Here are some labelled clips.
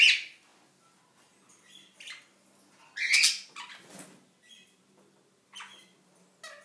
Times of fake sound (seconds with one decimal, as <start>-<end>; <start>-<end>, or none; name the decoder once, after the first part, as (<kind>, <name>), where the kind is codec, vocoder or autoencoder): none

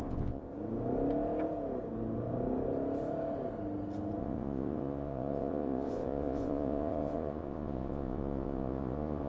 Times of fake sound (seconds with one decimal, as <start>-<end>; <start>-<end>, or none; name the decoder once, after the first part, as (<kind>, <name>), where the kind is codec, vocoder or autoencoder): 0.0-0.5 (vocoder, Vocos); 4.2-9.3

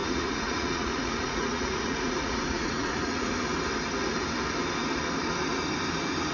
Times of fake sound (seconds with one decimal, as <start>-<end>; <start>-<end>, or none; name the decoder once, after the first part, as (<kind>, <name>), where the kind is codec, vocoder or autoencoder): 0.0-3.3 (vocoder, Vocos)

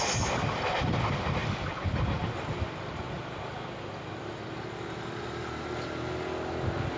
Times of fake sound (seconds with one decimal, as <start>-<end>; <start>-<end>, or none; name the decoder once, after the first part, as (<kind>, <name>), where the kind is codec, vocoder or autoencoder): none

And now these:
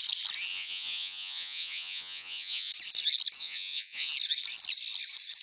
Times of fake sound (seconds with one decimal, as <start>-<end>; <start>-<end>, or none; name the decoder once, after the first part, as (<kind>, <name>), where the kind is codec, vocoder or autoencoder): 0.5-2.7 (vocoder, Vocos); 3.4-4.1